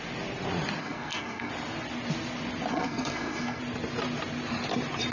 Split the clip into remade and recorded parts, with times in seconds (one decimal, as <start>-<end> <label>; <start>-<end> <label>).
0.0-0.8 recorded; 0.8-1.5 remade; 1.5-2.7 recorded; 2.7-3.6 remade; 3.6-5.1 recorded